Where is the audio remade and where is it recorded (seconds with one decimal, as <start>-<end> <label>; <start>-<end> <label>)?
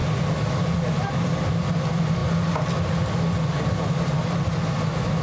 0.0-5.2 recorded